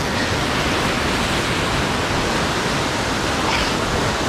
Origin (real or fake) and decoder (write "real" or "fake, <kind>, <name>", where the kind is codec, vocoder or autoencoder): real